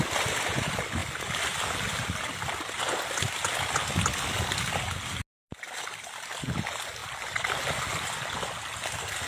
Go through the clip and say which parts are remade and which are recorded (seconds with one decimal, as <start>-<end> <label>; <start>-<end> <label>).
0.0-9.3 recorded